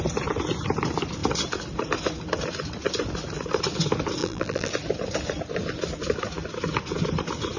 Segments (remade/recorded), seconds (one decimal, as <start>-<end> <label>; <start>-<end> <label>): 0.0-4.2 recorded; 4.2-4.7 remade; 4.7-7.6 recorded